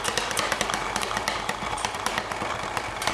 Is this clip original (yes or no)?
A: no